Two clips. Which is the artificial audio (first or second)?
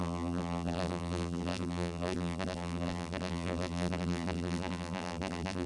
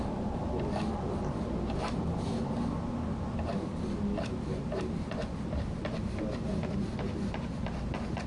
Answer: first